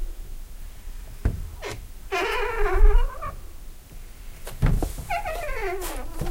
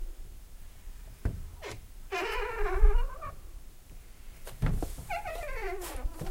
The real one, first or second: first